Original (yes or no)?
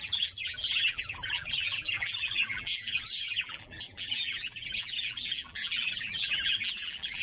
no